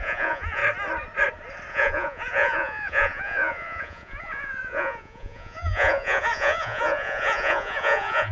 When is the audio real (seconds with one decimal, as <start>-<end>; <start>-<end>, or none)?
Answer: 0.6-1.7